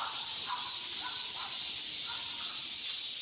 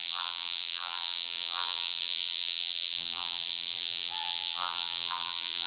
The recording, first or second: first